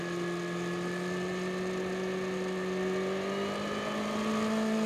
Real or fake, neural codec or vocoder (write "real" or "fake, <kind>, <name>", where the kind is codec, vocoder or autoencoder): real